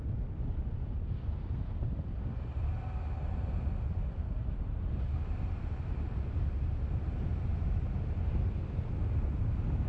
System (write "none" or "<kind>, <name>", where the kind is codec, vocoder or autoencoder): none